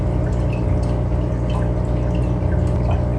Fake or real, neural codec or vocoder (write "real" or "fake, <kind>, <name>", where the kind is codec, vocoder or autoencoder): real